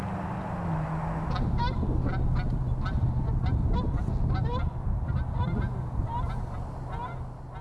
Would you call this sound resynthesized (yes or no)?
no